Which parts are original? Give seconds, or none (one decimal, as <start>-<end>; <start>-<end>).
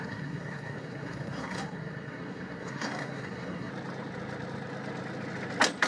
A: 3.7-5.9